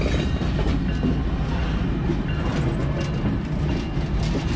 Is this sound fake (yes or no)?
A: no